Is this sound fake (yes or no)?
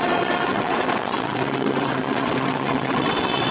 yes